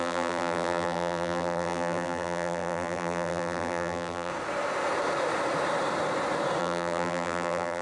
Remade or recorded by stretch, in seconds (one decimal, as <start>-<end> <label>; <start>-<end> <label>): 0.0-4.3 remade; 4.3-6.6 recorded; 6.6-7.8 remade